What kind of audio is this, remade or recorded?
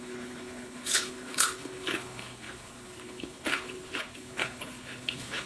remade